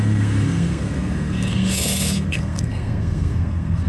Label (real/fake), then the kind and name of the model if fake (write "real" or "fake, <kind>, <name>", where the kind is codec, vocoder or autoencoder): fake, codec, SNAC